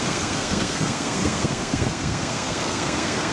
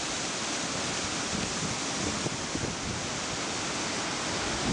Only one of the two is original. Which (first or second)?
second